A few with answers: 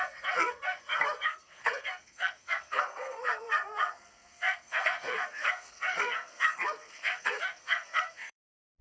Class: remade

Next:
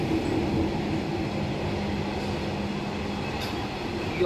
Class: recorded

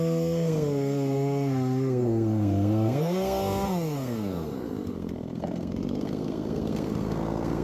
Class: remade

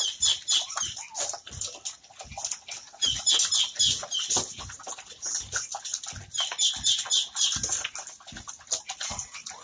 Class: recorded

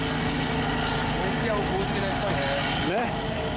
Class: recorded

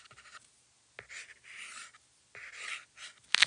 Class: recorded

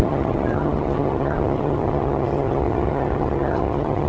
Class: remade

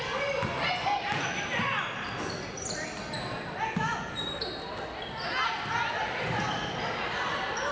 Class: recorded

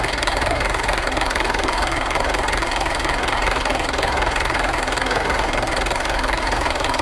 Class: remade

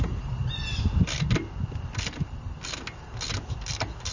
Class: recorded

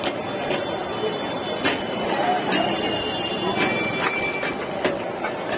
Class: recorded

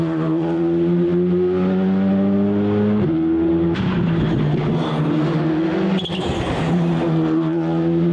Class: recorded